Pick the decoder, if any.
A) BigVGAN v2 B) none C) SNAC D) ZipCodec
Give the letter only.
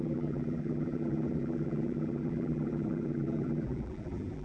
A